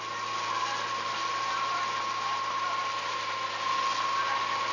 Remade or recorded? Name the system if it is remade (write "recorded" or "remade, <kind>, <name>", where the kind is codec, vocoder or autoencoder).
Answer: recorded